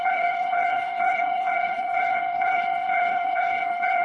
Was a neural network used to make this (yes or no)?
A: yes